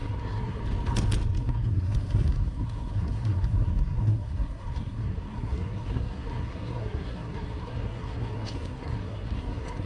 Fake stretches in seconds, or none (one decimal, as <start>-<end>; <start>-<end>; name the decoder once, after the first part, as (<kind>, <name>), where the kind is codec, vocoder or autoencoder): 0.0-0.6 (codec, SNAC); 1.4-9.9